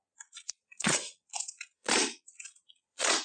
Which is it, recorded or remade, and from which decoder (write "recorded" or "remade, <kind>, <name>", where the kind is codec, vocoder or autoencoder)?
remade, vocoder, Vocos